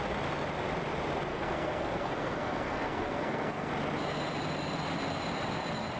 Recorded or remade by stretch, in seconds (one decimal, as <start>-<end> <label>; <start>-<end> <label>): 0.0-1.3 recorded; 1.3-3.7 remade; 3.7-6.0 recorded